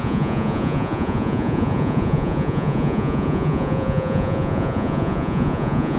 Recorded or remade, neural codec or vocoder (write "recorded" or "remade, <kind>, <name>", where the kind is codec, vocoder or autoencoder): remade, vocoder, Vocos